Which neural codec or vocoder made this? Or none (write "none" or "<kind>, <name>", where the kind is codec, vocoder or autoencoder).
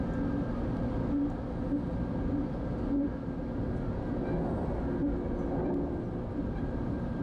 none